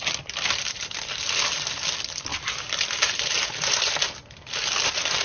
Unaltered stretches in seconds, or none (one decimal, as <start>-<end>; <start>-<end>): 0.0-2.3; 3.8-5.2